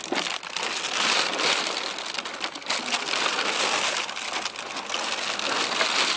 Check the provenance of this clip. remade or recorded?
recorded